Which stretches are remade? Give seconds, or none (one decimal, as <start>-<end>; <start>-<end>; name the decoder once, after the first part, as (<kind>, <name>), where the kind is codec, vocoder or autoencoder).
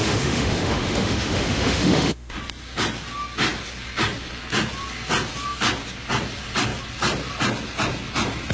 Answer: 0.0-2.4 (autoencoder, DAC-VAE)